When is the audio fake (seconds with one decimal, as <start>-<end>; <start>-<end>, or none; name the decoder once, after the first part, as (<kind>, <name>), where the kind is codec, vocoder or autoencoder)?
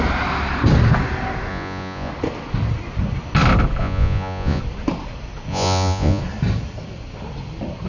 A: 1.5-2.1 (vocoder, Vocos); 3.8-4.6; 5.5-6.2